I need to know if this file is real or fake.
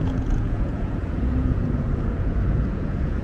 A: fake